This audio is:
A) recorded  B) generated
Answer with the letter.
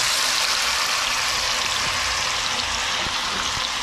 A